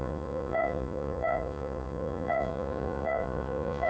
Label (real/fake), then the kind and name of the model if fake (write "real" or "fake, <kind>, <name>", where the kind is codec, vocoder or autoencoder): fake, vocoder, Vocos